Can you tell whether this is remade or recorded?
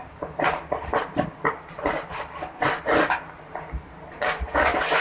recorded